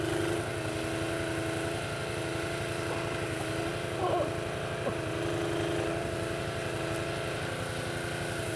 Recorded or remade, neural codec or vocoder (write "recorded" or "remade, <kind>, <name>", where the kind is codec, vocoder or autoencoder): recorded